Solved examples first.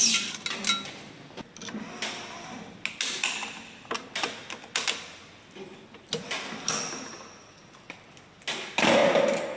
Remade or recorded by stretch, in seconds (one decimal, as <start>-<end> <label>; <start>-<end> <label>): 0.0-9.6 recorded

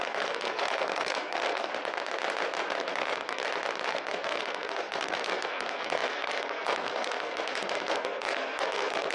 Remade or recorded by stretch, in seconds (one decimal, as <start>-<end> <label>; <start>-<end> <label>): 0.0-1.7 remade; 1.7-2.9 recorded; 2.9-3.4 remade; 3.4-3.9 recorded; 3.9-9.1 remade

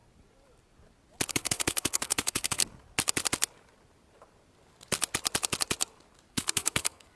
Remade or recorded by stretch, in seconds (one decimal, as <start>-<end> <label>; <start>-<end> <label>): 0.0-1.3 recorded; 1.3-2.6 remade; 2.6-6.3 recorded; 6.3-7.2 remade

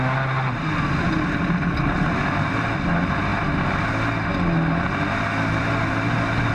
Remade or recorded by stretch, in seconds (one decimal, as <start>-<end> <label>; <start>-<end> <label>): 0.0-6.5 recorded

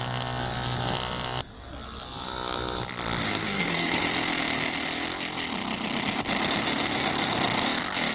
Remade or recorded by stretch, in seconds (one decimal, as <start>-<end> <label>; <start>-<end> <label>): 0.0-3.3 recorded; 3.3-4.0 remade; 4.0-8.1 recorded